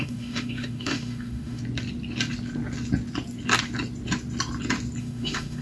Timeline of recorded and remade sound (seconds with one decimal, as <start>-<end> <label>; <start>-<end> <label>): 0.0-1.6 remade; 1.6-5.0 recorded; 5.0-5.6 remade